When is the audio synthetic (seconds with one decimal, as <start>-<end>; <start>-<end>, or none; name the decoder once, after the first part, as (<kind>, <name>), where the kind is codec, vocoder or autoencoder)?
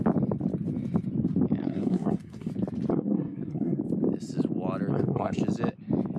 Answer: 1.6-2.5 (codec, SNAC); 2.9-3.8; 4.9-5.4